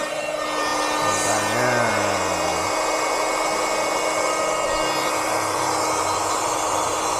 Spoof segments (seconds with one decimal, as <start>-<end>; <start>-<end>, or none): none